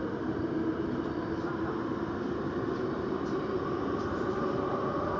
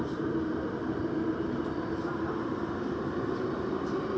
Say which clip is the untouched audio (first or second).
first